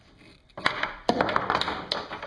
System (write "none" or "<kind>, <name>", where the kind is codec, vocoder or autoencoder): none